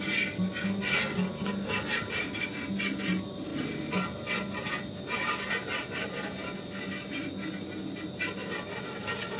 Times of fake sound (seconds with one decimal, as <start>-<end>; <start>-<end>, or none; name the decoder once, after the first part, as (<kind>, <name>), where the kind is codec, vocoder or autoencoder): none